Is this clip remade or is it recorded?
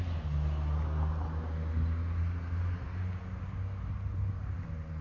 recorded